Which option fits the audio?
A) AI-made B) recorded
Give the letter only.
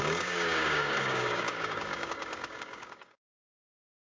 A